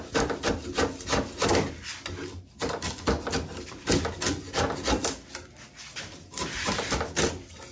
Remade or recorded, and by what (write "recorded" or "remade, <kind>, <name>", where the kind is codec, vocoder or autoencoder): recorded